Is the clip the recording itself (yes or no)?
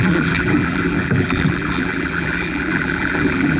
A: no